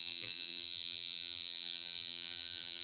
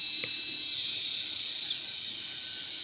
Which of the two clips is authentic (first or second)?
second